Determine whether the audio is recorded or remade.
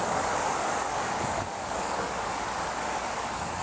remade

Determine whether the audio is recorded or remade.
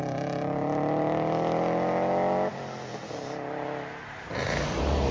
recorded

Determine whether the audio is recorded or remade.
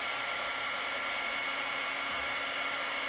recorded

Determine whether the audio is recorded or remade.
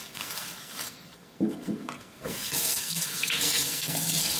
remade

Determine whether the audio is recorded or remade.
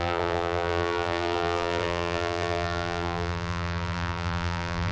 remade